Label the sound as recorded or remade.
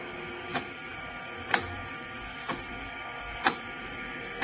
recorded